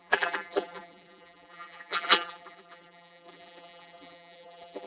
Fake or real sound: fake